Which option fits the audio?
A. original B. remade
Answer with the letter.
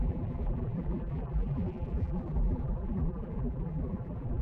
B